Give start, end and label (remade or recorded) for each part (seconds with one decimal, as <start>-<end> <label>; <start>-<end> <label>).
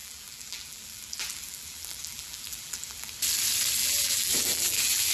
0.0-3.1 remade; 3.1-3.8 recorded; 3.8-5.1 remade